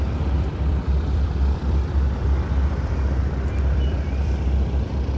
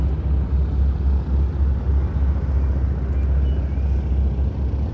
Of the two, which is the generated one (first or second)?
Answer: first